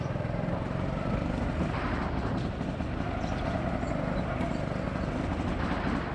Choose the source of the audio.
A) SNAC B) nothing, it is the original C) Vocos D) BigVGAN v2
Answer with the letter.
D